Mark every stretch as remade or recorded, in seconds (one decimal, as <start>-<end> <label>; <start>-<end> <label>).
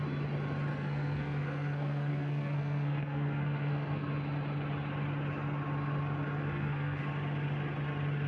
0.0-0.7 recorded; 0.7-4.1 remade; 4.1-6.4 recorded; 6.4-7.0 remade; 7.0-8.3 recorded